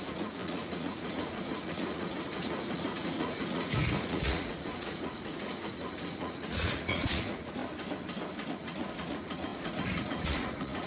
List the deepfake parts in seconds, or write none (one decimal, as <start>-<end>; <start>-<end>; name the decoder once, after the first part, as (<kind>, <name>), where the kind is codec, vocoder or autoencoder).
0.0-7.6 (vocoder, Vocos); 8.5-10.9